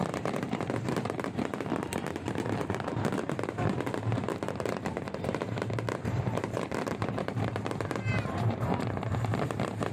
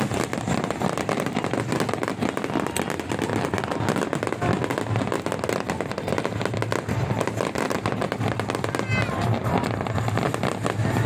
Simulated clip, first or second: first